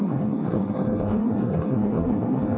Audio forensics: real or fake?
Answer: fake